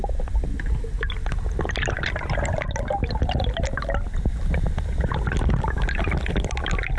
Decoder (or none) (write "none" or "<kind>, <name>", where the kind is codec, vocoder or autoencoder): none